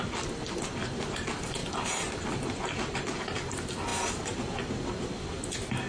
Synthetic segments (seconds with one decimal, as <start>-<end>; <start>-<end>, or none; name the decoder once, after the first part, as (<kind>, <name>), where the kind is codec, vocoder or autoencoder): 1.6-3.2 (vocoder, BigVGAN v2); 3.9-4.7